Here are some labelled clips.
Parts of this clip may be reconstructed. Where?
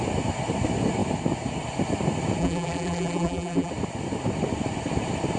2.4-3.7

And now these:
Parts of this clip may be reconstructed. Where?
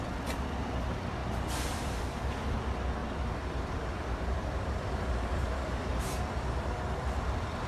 3.0-7.7